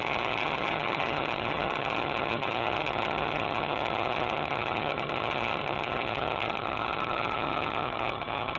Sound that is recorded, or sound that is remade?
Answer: remade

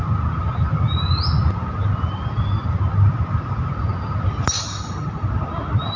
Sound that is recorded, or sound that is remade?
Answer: recorded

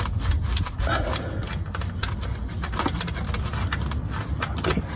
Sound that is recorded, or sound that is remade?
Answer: recorded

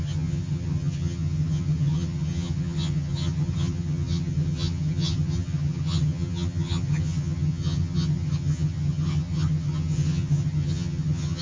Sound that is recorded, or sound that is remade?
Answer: remade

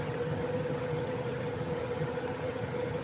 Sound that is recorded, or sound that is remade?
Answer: remade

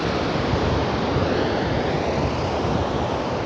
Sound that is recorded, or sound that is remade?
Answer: recorded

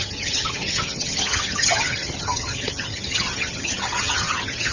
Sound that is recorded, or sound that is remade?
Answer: remade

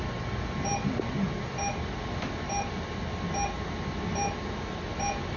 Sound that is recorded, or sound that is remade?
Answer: recorded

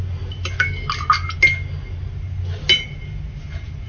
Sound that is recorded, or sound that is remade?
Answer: recorded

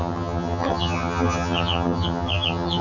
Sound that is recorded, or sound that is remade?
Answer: remade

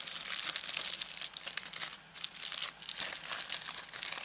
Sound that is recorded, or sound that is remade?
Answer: recorded